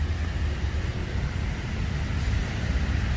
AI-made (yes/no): no